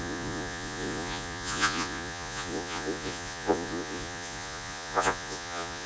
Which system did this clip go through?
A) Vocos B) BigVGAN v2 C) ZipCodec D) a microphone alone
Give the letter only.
A